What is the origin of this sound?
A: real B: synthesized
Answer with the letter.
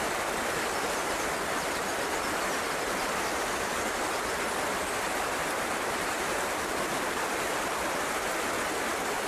A